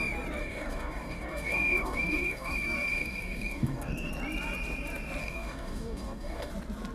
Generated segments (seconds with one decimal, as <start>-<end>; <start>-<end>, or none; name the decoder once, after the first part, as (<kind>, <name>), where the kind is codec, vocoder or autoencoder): 0.4-4.1 (codec, DAC); 5.2-6.5